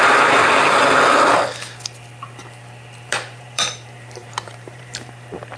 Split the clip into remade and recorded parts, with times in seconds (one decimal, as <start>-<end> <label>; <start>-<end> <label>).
0.0-0.4 remade; 0.4-3.1 recorded; 3.1-5.6 remade